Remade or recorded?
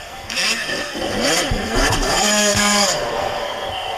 remade